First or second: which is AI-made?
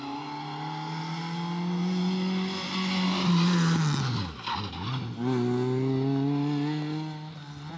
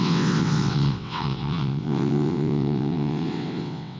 second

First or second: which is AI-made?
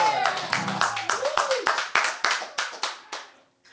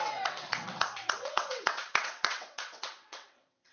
second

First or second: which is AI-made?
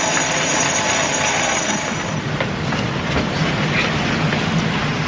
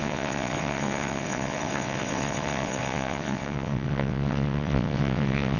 second